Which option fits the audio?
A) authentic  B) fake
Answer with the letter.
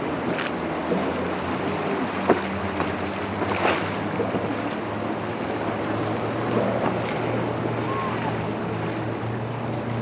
A